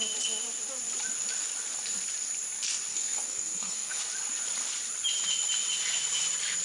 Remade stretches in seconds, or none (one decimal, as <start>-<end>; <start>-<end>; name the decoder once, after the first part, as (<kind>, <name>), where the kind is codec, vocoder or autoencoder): 2.9-4.0 (codec, SNAC)